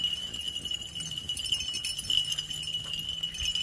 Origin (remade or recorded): recorded